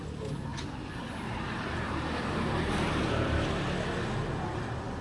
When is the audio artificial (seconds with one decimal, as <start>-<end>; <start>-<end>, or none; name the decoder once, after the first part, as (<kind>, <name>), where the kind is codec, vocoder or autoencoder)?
0.5-3.5 (vocoder, BigVGAN v2)